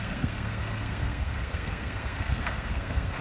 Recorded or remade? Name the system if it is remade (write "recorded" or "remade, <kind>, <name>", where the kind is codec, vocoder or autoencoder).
remade, codec, SNAC